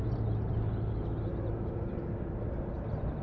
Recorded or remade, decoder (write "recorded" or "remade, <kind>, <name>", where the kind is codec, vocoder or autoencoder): recorded